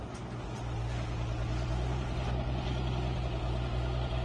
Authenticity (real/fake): real